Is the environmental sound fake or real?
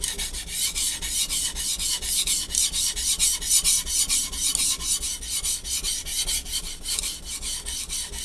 real